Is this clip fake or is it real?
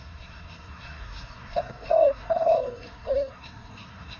fake